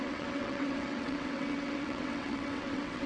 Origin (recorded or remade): remade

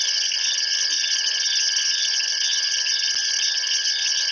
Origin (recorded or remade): recorded